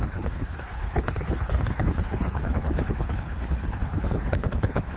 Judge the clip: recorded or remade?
remade